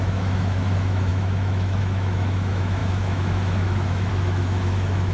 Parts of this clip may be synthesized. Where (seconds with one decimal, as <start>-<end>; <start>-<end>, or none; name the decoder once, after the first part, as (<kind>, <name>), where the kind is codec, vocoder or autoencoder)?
0.0-5.1 (autoencoder, DAC-VAE)